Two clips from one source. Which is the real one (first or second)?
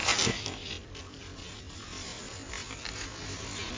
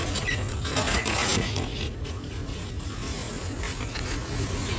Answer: first